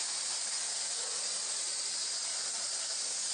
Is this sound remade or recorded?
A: recorded